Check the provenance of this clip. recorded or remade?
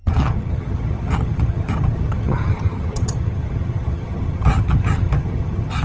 remade